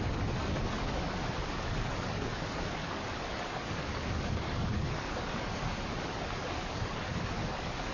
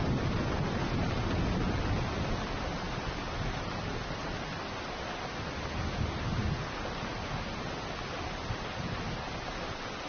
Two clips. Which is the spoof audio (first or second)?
first